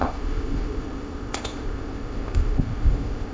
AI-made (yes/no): yes